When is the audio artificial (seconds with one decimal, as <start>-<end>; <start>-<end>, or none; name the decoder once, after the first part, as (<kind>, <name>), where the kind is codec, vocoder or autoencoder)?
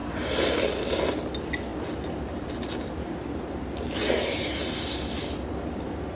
none